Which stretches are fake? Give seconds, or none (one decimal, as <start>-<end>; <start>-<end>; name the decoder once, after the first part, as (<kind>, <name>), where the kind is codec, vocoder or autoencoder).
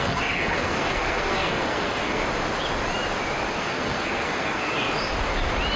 0.0-2.2 (codec, SNAC); 3.6-4.7